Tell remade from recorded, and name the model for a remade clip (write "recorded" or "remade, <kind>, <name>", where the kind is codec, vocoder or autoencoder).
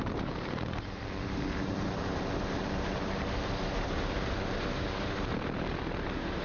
remade, vocoder, BigVGAN v2